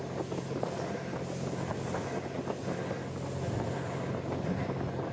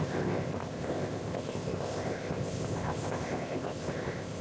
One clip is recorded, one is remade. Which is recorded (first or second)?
first